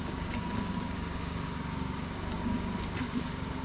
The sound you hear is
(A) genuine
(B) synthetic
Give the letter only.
B